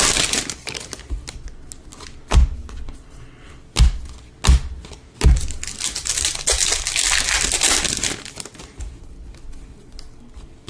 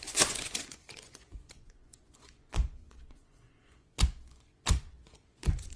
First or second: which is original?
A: first